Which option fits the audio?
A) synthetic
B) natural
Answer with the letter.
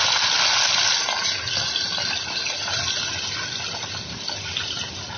B